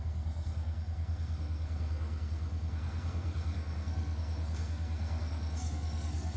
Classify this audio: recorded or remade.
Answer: remade